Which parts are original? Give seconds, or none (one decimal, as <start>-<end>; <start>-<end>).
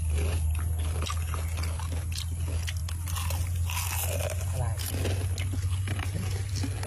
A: 0.0-6.9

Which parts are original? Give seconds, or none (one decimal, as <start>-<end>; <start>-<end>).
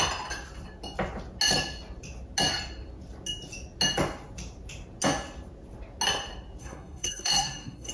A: 0.0-6.6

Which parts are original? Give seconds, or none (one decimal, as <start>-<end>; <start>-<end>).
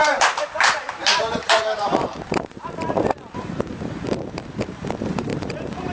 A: none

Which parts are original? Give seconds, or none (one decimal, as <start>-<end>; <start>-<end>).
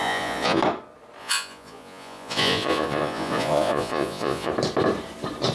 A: 0.6-1.2; 4.5-5.5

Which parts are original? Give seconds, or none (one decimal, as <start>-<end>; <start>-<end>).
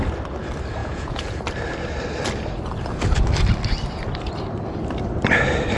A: 0.0-0.8; 1.4-5.8